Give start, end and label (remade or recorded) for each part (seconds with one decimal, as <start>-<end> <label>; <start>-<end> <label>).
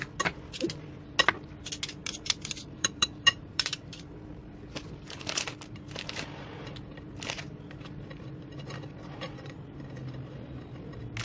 0.0-2.0 recorded; 2.0-4.5 remade; 4.5-11.2 recorded